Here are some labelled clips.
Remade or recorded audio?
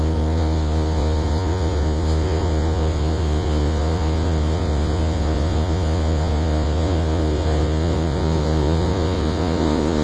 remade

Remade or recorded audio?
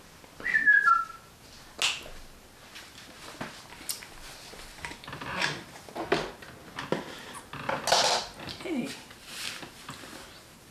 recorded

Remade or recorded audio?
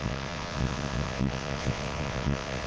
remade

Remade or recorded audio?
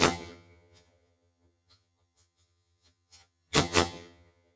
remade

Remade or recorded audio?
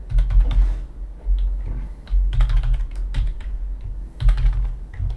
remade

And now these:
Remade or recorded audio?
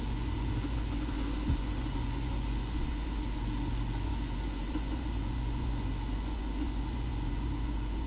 remade